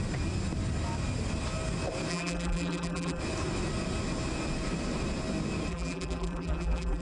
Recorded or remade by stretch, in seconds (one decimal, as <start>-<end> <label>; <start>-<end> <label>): 0.0-2.1 recorded; 2.1-3.2 remade; 3.2-5.7 recorded; 5.7-7.0 remade